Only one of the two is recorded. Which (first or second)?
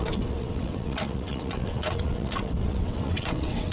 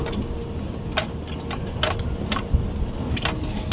second